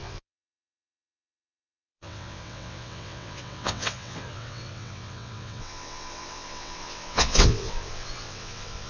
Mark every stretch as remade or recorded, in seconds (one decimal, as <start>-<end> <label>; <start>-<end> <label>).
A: 0.0-8.9 remade